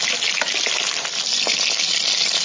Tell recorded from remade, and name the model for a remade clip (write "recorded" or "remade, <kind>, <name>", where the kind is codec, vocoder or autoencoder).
recorded